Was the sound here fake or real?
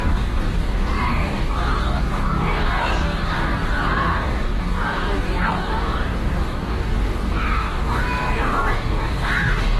fake